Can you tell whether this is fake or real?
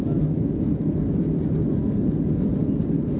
real